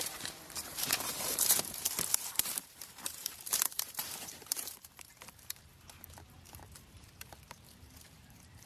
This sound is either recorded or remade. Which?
remade